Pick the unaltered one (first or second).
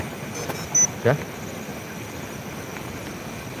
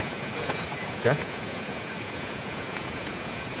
first